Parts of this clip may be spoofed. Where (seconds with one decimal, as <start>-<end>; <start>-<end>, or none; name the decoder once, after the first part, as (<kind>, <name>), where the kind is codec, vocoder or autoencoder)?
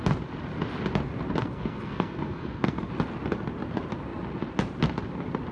1.4-2.9 (codec, SNAC)